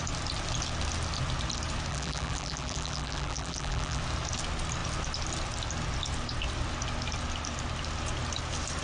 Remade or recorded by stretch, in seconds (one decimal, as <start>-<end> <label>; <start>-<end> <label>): 0.0-1.9 recorded; 1.9-4.0 remade; 4.0-8.8 recorded